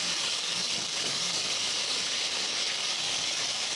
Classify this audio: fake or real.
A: fake